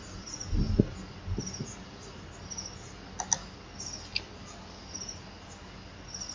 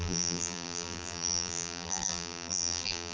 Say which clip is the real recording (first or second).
first